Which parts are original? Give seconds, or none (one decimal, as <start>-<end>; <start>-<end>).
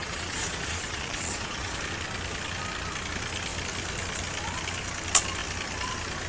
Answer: 1.8-6.3